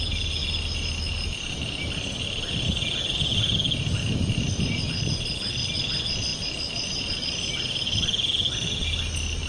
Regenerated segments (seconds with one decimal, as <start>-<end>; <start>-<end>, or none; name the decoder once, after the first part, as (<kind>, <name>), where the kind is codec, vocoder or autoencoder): none

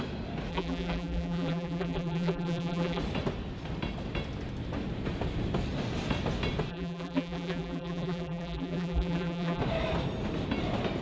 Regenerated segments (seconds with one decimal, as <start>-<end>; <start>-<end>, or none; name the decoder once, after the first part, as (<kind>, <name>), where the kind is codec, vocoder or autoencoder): 0.5-3.0 (vocoder, BigVGAN v2); 6.7-9.6

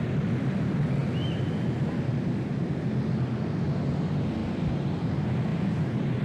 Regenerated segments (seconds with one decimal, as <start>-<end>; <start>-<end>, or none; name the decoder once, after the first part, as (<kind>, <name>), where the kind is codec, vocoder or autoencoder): 4.4-5.0 (vocoder, BigVGAN v2); 5.5-6.2

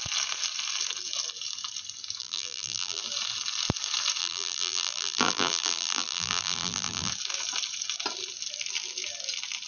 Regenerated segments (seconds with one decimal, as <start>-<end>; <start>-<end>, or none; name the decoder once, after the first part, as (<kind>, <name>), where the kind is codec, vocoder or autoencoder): 2.2-3.0 (vocoder, BigVGAN v2); 4.2-7.1